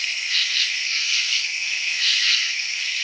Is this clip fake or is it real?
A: fake